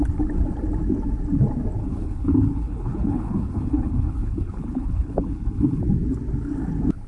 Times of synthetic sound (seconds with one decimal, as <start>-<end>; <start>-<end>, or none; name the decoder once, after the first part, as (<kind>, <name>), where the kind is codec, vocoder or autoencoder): 1.8-5.8 (codec, HILCodec)